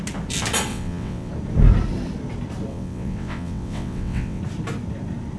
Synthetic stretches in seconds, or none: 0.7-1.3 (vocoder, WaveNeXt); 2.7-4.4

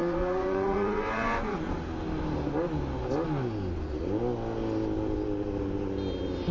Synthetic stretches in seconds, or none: 0.0-1.7 (vocoder, Vocos)

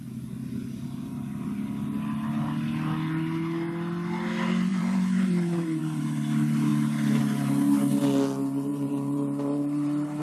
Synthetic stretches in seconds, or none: 4.7-5.8 (vocoder, BigVGAN v2); 6.7-7.2; 8.7-10.2

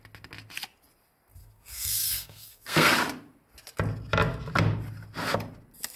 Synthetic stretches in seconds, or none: 1.4-2.9 (codec, SNAC)

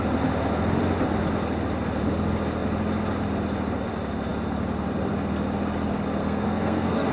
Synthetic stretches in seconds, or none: 6.2-7.1 (codec, SNAC)

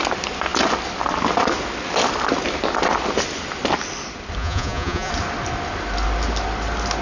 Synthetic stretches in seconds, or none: 4.4-5.1 (vocoder, Vocos)

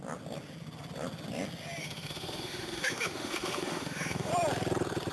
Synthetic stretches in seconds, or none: 1.8-4.3 (autoencoder, DAC-VAE)